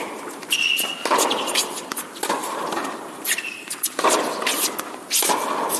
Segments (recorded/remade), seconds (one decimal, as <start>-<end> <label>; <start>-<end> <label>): 0.0-2.4 recorded; 2.4-4.3 remade; 4.3-5.8 recorded